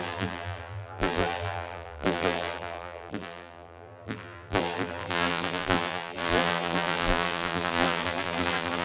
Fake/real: fake